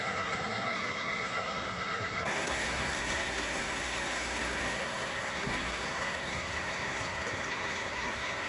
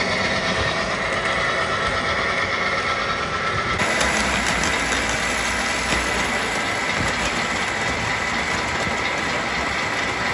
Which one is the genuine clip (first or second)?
second